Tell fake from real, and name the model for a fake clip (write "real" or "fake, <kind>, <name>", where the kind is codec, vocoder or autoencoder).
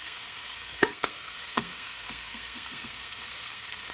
fake, codec, SNAC